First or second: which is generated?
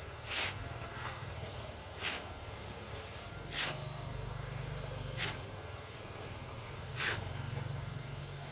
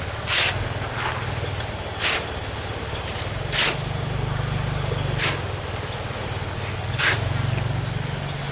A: first